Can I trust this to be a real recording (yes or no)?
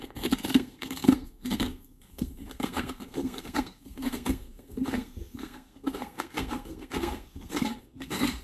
no